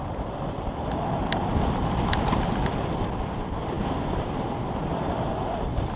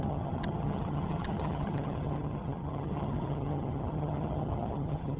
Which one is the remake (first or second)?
second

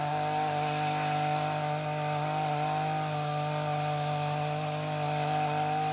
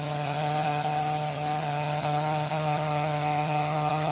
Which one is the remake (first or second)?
second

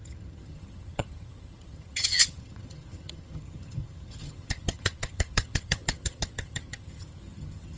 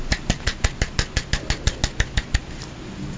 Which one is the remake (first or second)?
first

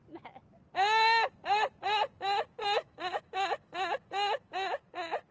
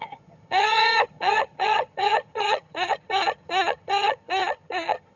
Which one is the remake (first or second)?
second